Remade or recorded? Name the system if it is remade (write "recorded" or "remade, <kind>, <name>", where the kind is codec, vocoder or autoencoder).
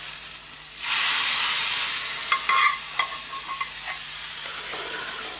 recorded